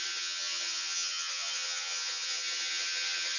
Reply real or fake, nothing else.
fake